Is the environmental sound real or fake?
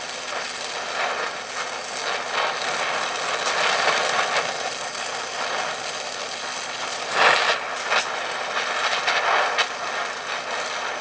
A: real